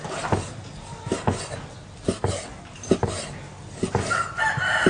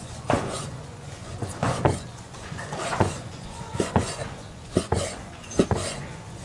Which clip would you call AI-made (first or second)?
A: second